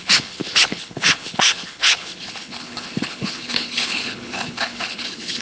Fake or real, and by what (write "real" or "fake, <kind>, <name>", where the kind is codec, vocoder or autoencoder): fake, codec, HILCodec